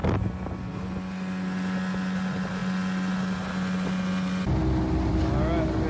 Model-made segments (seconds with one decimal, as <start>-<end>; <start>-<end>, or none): 0.0-0.6

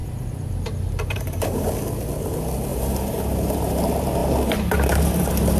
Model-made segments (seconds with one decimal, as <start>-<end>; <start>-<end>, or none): 0.0-1.7; 2.7-3.8; 4.2-5.6

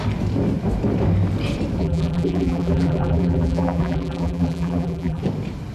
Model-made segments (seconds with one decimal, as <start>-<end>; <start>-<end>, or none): 1.8-5.2

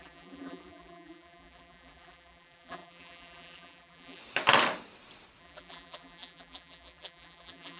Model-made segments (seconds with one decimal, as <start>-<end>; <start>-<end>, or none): 0.0-4.2; 5.4-7.8

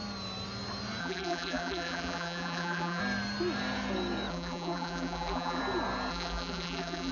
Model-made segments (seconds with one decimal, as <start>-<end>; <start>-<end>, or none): 1.0-3.0; 4.3-5.6; 6.1-7.1